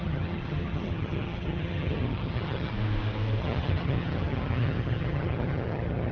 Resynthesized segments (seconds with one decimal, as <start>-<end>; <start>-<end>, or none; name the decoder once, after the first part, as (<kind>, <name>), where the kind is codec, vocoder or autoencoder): 0.0-2.7 (vocoder, HiFi-GAN); 3.4-6.1